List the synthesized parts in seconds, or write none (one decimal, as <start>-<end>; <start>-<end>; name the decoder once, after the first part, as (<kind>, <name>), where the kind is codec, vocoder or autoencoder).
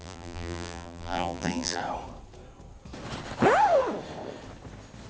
0.0-1.8 (vocoder, BigVGAN v2)